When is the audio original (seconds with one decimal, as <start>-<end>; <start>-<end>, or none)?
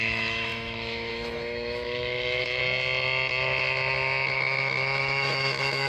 2.6-4.3